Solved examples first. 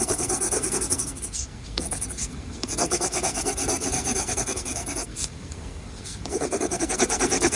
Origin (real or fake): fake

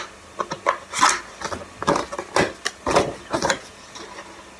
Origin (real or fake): real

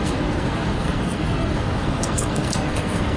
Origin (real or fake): fake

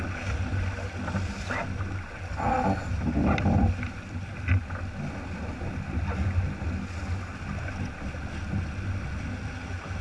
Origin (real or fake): real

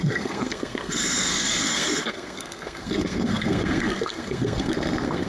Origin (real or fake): fake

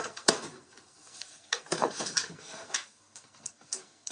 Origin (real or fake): fake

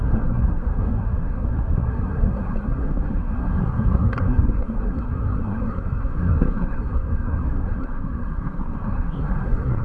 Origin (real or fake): fake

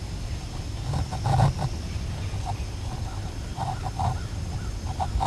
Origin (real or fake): real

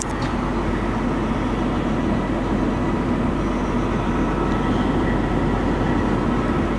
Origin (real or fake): real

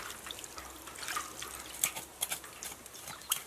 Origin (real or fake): real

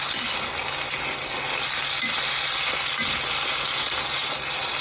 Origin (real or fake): real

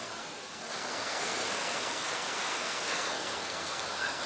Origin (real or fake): fake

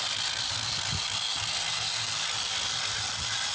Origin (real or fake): real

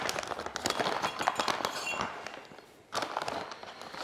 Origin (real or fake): real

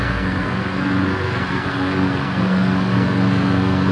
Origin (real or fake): fake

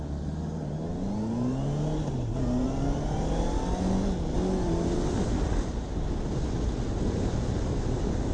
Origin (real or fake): real